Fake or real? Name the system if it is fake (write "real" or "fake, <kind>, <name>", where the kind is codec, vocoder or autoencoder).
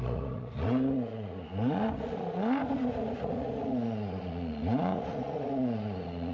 fake, vocoder, Vocos